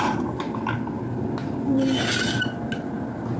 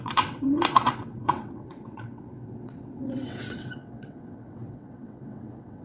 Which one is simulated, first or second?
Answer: second